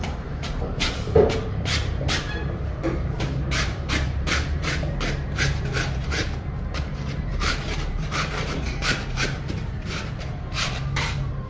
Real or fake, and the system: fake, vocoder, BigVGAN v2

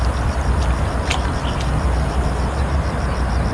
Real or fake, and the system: real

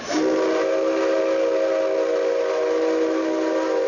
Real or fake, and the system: real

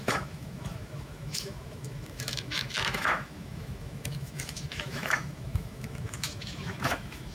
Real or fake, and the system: fake, autoencoder, DAC-VAE